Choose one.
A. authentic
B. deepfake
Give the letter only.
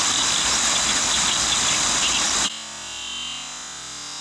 A